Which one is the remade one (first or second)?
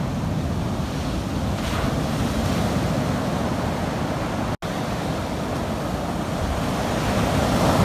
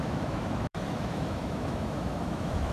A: second